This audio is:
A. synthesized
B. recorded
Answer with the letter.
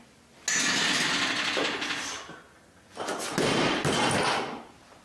B